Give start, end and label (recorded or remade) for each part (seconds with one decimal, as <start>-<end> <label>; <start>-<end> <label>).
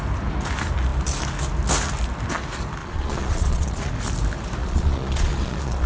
0.0-2.8 recorded; 2.8-3.9 remade; 3.9-4.6 recorded; 4.6-5.9 remade